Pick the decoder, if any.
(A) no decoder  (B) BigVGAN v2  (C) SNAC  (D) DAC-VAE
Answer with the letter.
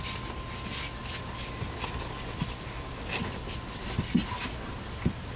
A